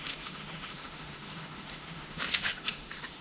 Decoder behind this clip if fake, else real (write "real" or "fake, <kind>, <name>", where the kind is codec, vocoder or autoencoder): fake, autoencoder, DAC-VAE